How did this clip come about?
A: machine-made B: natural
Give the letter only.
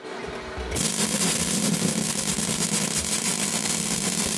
B